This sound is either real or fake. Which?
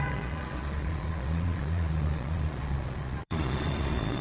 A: fake